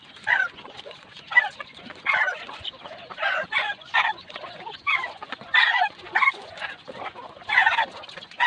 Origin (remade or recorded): remade